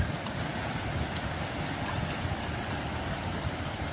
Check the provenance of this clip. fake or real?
real